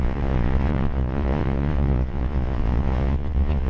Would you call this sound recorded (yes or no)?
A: no